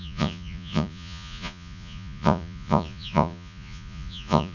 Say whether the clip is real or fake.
fake